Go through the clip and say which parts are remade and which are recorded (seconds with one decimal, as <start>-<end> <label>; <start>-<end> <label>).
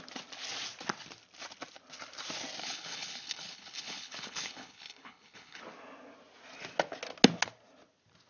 0.0-2.6 recorded; 2.6-5.6 remade; 5.6-8.3 recorded